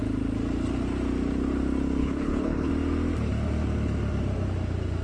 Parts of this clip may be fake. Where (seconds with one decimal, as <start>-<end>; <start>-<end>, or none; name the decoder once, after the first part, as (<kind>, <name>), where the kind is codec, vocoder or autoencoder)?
2.0-2.7 (codec, HILCodec)